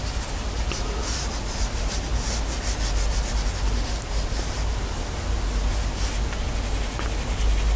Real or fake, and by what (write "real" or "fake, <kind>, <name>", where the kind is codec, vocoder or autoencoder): real